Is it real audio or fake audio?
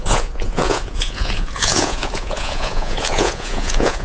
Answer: fake